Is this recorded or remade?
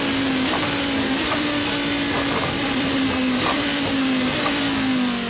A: recorded